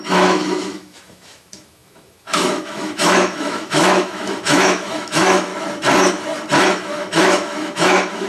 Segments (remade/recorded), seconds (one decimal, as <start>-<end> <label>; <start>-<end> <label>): 0.0-5.5 remade; 5.5-6.7 recorded; 6.7-8.3 remade